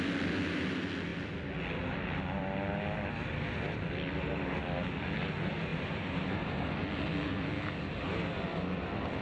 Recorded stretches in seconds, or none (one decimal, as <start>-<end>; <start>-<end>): 0.0-5.7; 6.7-9.2